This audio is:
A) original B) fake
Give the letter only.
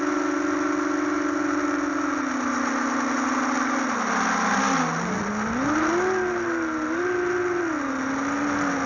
A